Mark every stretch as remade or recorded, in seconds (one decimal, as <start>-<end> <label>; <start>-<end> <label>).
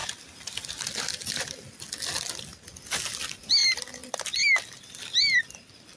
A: 0.0-6.0 recorded